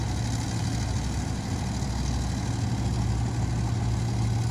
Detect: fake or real real